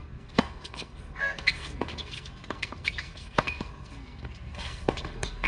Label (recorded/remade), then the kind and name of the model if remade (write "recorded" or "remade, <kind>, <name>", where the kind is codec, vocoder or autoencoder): remade, codec, SNAC